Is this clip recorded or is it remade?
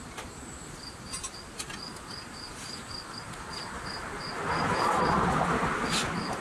recorded